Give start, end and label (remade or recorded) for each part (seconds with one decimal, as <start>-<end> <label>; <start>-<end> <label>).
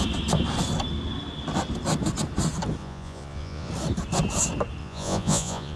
0.0-2.8 recorded; 2.8-3.7 remade; 3.7-4.8 recorded; 4.8-5.8 remade